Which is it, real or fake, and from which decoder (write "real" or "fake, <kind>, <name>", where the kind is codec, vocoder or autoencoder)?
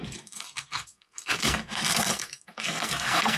fake, codec, SNAC